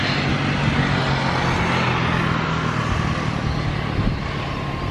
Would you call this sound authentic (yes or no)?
yes